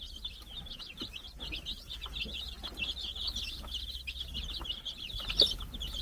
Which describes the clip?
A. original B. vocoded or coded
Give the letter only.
A